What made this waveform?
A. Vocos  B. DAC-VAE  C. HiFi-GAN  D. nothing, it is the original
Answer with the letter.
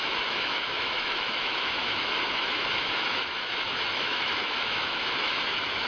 B